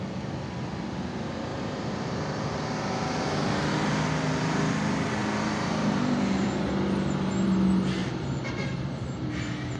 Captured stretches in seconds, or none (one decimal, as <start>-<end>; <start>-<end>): 0.0-1.5; 6.7-8.0; 9.3-9.8